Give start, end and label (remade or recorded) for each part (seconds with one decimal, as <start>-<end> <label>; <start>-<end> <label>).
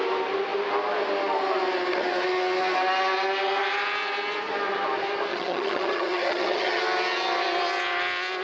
0.0-5.3 recorded; 5.3-6.8 remade; 6.8-8.4 recorded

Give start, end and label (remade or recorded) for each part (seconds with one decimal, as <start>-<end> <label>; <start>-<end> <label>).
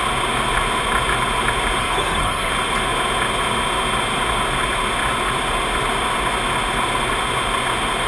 0.0-1.8 recorded; 1.8-2.5 remade; 2.5-8.1 recorded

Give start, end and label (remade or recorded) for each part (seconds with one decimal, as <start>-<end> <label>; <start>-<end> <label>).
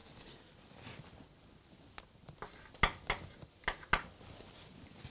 0.0-5.1 recorded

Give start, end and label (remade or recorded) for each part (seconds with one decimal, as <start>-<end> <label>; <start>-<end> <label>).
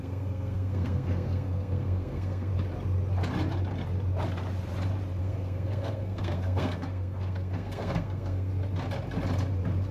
0.0-2.5 remade; 2.5-5.2 recorded; 5.2-8.5 remade; 8.5-9.9 recorded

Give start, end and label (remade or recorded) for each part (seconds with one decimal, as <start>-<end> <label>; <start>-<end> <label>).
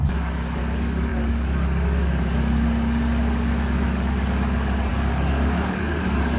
0.0-6.4 remade